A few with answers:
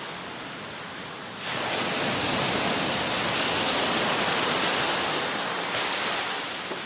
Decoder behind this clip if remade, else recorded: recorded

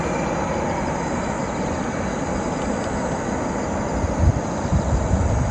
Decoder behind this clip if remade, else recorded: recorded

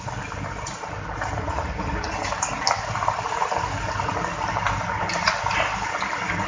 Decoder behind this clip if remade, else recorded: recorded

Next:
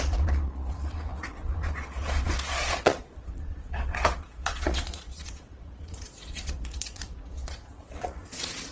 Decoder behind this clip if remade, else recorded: remade, vocoder, Vocos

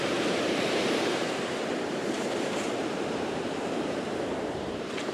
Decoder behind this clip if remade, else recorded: remade, vocoder, BigVGAN v2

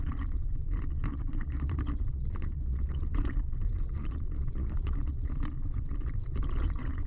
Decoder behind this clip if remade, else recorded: remade, vocoder, Vocos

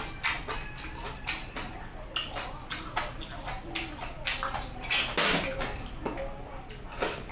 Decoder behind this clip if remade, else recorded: recorded